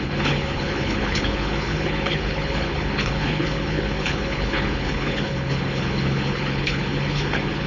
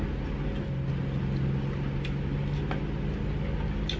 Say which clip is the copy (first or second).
first